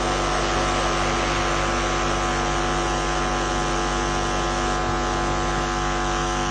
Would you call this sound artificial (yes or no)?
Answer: no